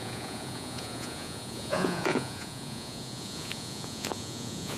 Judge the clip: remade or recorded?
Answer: remade